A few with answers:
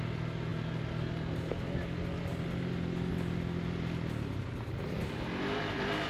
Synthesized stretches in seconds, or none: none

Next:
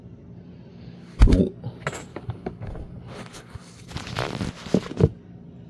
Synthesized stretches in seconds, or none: 0.7-1.4 (codec, DAC); 2.1-3.9

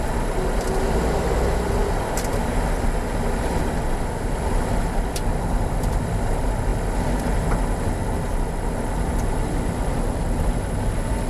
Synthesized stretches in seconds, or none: none

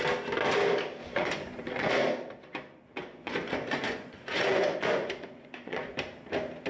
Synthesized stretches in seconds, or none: 1.0-1.9 (vocoder, Vocos); 3.0-5.9

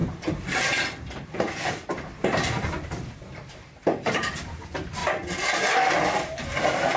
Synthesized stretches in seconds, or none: 0.0-5.0 (vocoder, BigVGAN v2); 6.1-7.0

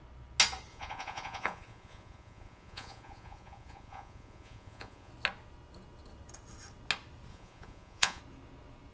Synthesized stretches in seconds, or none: 0.7-5.1 (vocoder, Vocos); 7.3-8.2

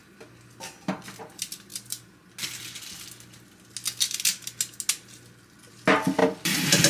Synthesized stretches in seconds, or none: 1.7-2.3 (vocoder, BigVGAN v2); 6.2-6.9

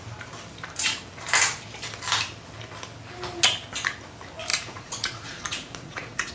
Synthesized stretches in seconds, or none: 4.5-6.3 (vocoder, Vocos)